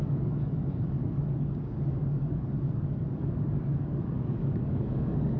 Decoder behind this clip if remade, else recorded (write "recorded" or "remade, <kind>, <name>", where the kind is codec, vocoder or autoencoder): remade, codec, DAC